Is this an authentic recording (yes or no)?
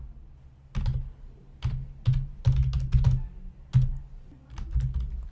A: yes